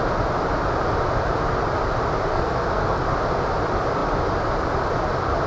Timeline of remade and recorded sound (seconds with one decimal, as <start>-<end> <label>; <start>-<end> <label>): 0.0-2.3 recorded; 2.3-3.0 remade; 3.0-5.5 recorded